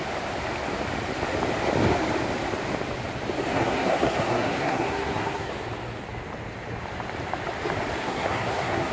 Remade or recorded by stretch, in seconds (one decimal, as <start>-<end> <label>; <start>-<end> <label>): 0.0-3.5 recorded; 3.5-5.5 remade; 5.5-8.0 recorded; 8.0-8.9 remade